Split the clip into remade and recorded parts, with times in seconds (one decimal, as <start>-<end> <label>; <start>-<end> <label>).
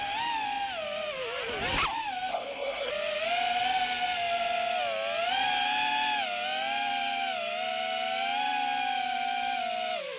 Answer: 0.0-2.3 recorded; 2.3-2.9 remade; 2.9-10.2 recorded